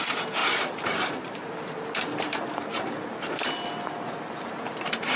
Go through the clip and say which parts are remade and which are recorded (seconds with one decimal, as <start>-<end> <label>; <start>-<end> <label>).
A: 0.0-0.4 recorded; 0.4-3.4 remade; 3.4-5.2 recorded